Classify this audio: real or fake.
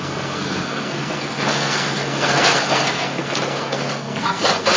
fake